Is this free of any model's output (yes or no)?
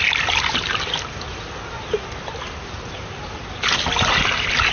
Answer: yes